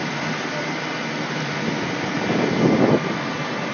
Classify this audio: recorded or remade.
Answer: recorded